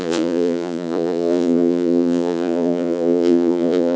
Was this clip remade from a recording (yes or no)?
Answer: yes